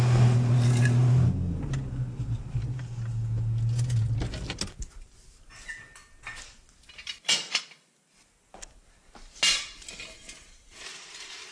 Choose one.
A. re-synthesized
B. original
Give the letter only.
B